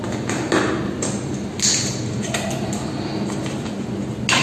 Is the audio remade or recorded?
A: recorded